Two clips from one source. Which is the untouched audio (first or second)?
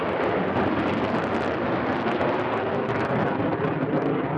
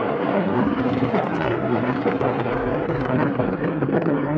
first